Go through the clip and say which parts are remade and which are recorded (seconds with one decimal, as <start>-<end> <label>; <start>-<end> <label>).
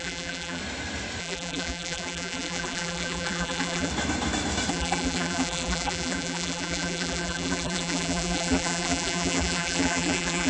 0.0-0.6 remade; 0.6-1.2 recorded; 1.2-3.9 remade; 3.9-4.7 recorded; 4.7-10.5 remade